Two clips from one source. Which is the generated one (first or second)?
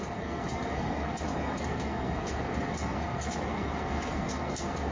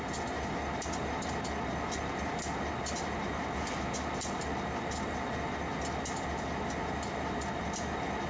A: first